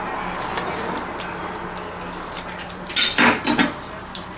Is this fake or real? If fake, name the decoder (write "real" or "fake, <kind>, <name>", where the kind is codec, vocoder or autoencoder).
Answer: real